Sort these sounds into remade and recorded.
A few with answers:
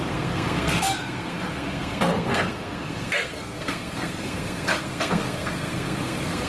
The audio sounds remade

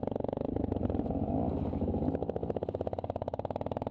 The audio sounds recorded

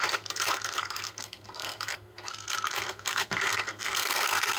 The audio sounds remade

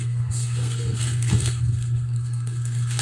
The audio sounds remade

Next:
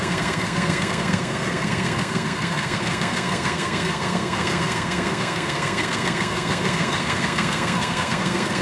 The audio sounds remade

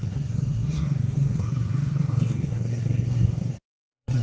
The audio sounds remade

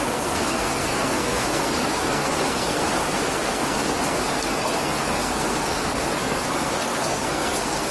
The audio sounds remade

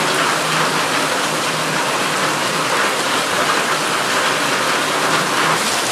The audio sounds recorded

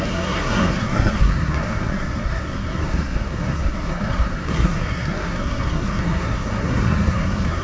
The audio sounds remade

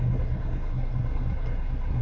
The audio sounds remade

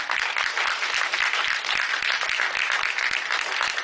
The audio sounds recorded